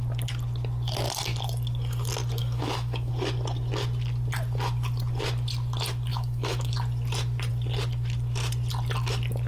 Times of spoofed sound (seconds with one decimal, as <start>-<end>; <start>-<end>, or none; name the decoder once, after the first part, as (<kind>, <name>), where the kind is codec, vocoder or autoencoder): 2.4-3.1 (autoencoder, DAC-VAE); 6.1-6.7